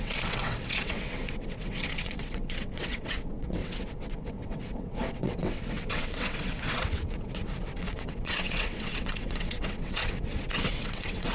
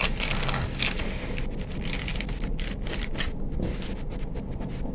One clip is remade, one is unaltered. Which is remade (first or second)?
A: first